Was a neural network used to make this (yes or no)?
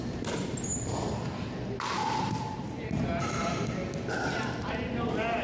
no